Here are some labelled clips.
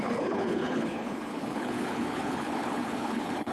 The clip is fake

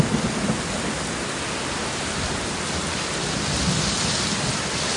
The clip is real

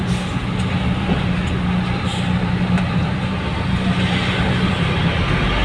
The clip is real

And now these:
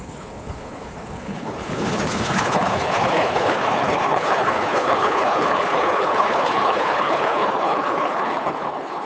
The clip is fake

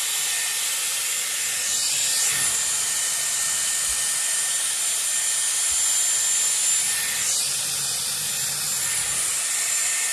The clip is real